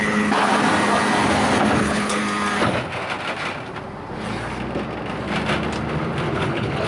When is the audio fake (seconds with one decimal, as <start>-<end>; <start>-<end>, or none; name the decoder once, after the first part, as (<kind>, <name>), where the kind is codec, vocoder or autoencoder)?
0.0-0.5 (codec, HILCodec); 1.8-2.2; 6.3-6.9